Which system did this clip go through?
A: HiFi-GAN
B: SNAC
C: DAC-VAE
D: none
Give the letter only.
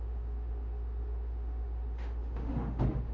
C